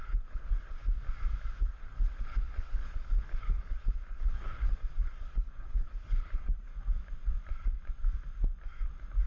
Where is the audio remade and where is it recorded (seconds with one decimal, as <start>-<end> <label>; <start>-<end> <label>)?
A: 0.0-0.8 remade; 0.8-1.6 recorded; 1.6-6.7 remade; 6.7-9.3 recorded